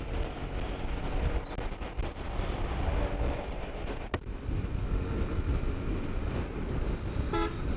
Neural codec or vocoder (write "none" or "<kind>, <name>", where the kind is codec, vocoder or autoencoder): none